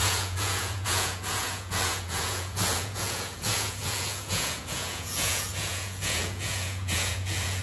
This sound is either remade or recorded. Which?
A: remade